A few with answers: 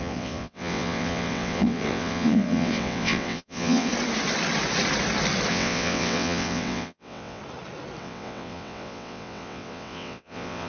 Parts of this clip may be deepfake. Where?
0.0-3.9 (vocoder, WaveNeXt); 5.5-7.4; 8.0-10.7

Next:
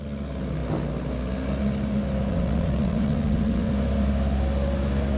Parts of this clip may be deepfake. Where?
2.3-3.7 (vocoder, WaveNeXt)

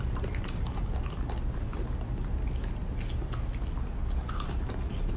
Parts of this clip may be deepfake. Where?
none

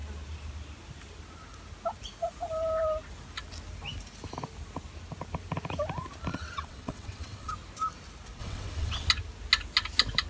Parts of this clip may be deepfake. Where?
6.3-7.5 (vocoder, WaveNeXt); 8.4-9.1

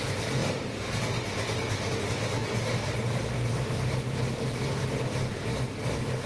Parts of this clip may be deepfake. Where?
none

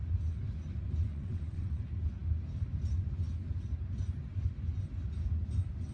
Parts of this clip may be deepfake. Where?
1.1-1.8 (vocoder, WaveNeXt)

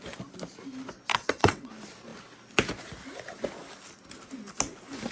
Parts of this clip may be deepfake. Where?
1.1-1.7 (vocoder, WaveNeXt)

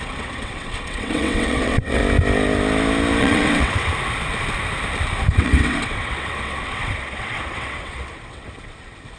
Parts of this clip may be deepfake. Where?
0.0-2.0 (vocoder, WaveNeXt); 3.2-3.9; 5.3-9.2